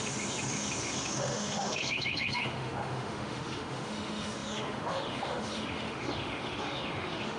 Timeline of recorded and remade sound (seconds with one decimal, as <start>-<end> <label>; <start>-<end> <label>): 0.0-7.4 remade